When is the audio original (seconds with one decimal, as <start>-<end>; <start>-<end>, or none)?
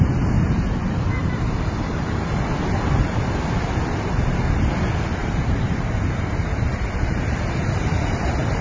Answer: 0.0-1.2; 2.3-5.2